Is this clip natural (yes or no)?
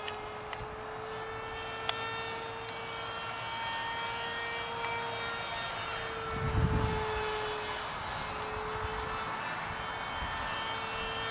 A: yes